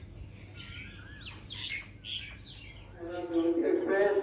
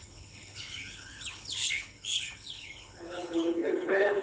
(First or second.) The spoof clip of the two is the second